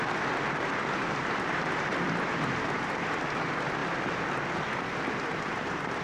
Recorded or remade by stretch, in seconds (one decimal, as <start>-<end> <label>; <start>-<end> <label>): 0.0-6.0 recorded